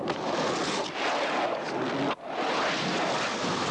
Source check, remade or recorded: recorded